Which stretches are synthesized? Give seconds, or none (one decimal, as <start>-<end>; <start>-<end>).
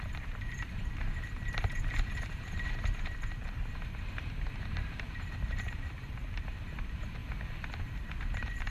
0.0-7.2; 8.0-8.7